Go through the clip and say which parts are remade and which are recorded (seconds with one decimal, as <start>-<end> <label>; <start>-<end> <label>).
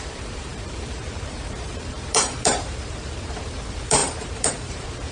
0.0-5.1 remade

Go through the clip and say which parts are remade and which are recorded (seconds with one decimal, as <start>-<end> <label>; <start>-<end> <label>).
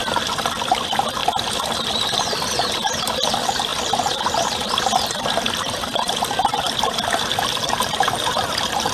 0.0-8.9 recorded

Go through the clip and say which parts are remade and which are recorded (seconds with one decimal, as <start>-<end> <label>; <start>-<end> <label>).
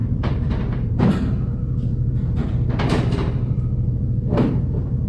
0.0-2.4 remade; 2.4-3.1 recorded; 3.1-5.1 remade